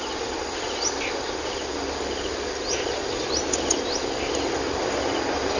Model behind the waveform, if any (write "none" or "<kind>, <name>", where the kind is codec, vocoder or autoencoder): none